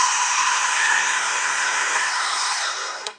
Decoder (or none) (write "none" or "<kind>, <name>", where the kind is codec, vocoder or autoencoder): codec, SNAC